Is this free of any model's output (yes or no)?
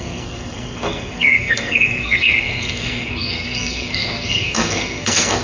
no